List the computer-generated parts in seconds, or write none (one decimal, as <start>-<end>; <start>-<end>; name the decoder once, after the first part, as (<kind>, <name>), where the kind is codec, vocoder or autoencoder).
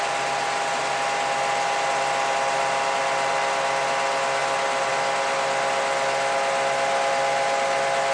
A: none